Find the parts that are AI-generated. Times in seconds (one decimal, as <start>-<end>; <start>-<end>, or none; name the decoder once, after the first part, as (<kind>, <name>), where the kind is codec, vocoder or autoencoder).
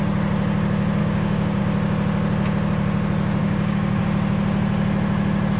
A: 1.0-1.6 (codec, DAC); 3.4-4.0